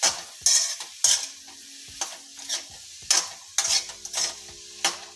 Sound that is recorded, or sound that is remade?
recorded